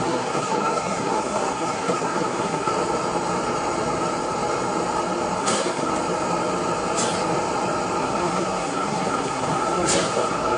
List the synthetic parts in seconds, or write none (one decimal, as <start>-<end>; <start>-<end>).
0.0-2.7; 5.4-5.9; 8.0-10.6